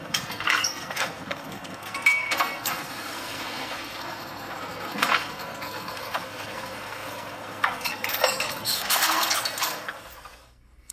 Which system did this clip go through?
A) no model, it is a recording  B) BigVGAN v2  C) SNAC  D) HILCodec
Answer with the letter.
C